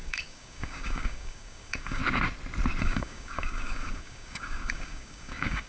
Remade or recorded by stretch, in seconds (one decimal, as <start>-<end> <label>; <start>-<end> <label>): 0.0-2.0 remade; 2.0-2.8 recorded; 2.8-5.7 remade